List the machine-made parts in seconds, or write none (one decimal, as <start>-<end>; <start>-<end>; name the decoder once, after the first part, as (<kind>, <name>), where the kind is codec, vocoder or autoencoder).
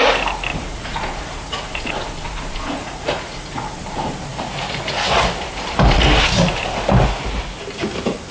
0.5-3.8 (vocoder, Vocos)